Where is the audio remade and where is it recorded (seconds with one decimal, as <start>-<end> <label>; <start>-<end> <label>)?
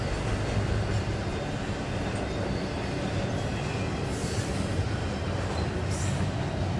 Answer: 0.0-4.2 recorded; 4.2-5.5 remade; 5.5-6.8 recorded